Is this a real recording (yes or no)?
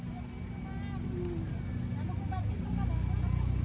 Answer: yes